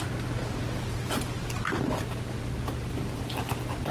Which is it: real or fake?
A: fake